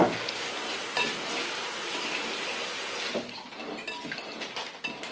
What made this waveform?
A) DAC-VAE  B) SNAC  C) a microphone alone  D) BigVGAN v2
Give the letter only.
C